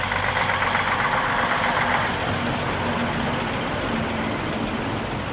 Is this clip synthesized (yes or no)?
no